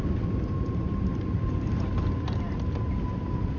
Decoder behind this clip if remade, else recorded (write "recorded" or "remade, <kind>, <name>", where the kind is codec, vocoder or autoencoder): recorded